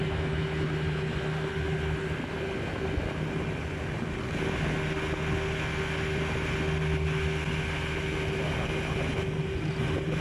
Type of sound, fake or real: real